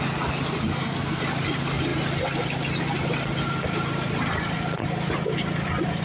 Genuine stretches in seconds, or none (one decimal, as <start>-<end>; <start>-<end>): 0.0-0.7; 1.2-6.0